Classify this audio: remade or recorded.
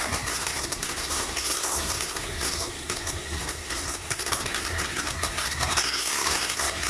remade